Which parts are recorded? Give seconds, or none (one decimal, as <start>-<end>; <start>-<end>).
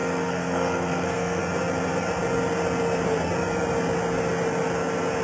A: 1.4-5.2